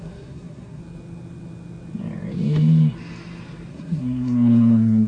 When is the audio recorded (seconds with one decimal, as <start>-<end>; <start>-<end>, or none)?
0.8-3.7